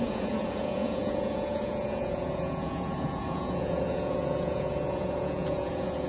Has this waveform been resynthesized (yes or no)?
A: yes